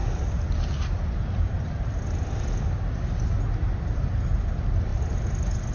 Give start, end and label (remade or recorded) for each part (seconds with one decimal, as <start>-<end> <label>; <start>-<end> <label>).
0.0-5.7 remade